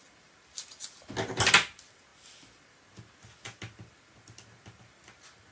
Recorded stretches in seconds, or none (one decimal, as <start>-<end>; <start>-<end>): 0.0-5.5